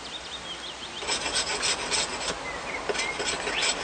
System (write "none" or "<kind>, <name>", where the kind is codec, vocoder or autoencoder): none